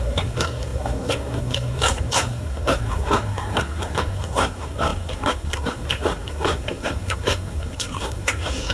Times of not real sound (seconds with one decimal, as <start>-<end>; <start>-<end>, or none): 0.0-8.7